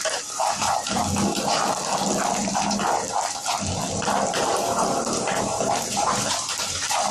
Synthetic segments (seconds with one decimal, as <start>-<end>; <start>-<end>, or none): 0.0-1.0; 5.3-7.1